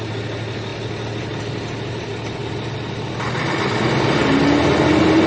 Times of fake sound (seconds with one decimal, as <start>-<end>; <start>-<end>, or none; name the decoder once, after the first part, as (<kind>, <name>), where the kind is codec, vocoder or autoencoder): none